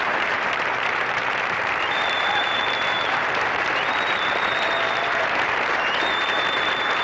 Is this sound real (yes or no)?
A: no